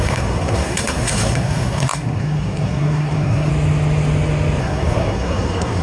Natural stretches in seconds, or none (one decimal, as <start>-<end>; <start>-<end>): 3.5-4.6